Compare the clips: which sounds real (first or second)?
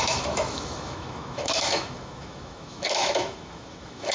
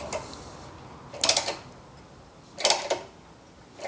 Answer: second